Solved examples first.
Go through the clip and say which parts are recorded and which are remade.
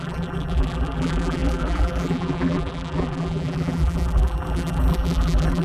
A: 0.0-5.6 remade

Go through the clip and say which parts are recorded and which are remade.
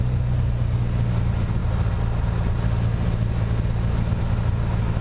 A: 0.0-5.0 recorded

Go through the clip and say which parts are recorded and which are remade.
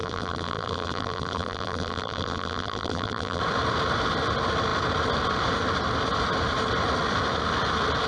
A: 0.0-3.4 remade; 3.4-8.1 recorded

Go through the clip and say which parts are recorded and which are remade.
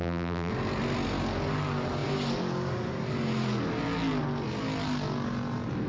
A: 0.0-0.5 remade; 0.5-5.9 recorded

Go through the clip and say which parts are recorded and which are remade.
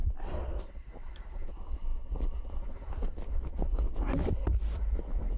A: 0.0-5.4 recorded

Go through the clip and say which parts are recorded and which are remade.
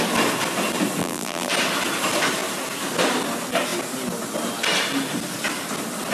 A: 0.0-1.0 recorded; 1.0-1.5 remade; 1.5-6.1 recorded